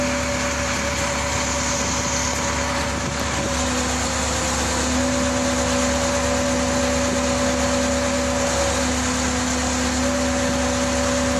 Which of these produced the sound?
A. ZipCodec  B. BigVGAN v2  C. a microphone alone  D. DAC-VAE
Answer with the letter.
C